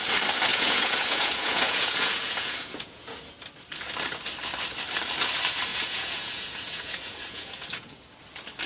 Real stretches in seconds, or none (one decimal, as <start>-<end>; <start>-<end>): 0.0-0.5; 3.2-5.7; 8.1-8.7